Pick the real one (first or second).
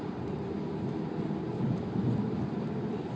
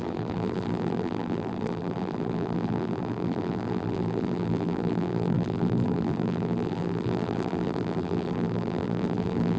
first